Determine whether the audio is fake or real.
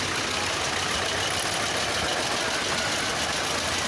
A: real